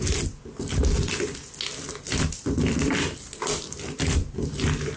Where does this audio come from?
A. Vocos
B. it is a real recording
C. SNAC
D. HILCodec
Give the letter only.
B